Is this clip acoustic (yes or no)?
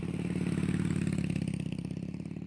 no